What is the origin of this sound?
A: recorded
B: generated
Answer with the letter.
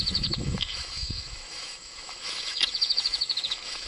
B